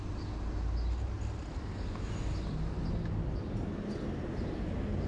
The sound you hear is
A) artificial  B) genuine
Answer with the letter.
B